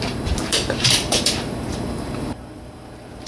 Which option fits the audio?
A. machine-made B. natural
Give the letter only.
A